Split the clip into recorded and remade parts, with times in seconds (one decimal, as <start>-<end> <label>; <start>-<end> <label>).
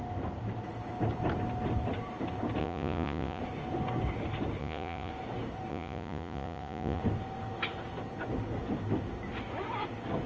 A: 0.0-2.6 recorded; 2.6-3.4 remade; 3.4-4.6 recorded; 4.6-5.1 remade; 5.1-5.7 recorded; 5.7-7.0 remade; 7.0-10.3 recorded